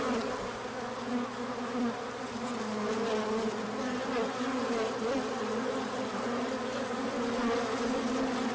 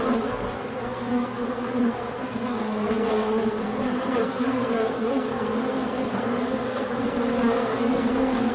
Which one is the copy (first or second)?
second